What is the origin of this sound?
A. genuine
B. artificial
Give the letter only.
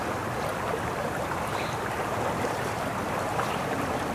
B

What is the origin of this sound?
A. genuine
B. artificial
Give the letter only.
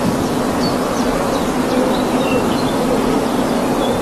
A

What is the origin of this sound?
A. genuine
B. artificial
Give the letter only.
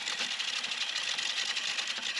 A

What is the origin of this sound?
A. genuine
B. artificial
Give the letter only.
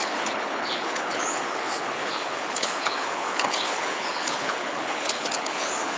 B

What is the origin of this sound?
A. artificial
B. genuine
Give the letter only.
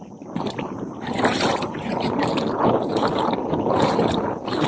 A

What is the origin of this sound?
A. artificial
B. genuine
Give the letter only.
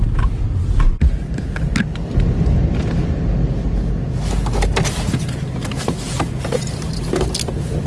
B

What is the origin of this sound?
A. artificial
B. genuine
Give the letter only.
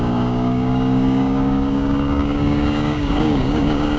A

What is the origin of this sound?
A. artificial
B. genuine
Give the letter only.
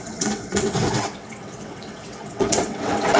A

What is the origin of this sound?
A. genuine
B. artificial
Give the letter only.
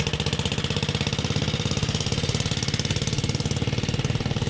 A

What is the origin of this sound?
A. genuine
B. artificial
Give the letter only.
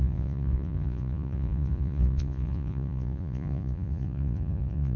B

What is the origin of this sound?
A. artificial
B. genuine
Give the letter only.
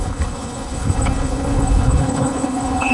A